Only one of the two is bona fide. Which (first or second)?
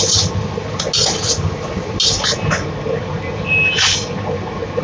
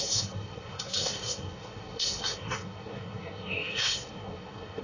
first